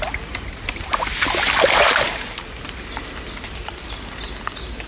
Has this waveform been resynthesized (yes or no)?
no